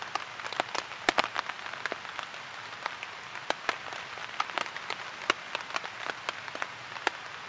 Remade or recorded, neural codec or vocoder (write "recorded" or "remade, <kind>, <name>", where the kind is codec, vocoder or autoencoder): recorded